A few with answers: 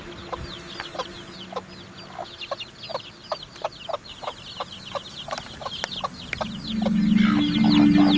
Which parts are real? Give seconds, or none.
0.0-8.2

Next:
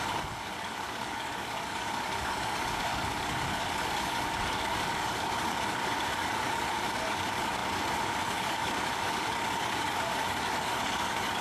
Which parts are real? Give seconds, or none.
none

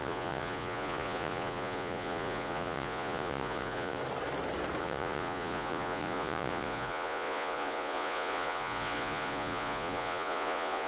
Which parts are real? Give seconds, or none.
4.0-4.8

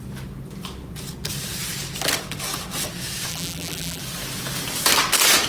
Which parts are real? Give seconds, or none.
0.0-3.3; 4.0-5.5

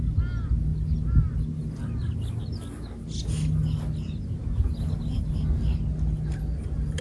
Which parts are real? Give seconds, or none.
0.0-7.0